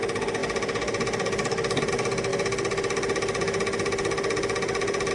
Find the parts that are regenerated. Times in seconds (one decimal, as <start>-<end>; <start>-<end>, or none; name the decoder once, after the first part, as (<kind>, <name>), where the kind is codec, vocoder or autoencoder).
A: none